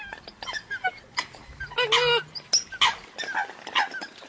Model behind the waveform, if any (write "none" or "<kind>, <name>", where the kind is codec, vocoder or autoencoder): none